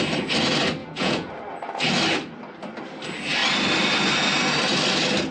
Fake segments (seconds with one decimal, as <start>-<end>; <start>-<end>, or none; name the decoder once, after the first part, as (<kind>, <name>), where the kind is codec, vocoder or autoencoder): 0.8-1.3 (vocoder, Vocos)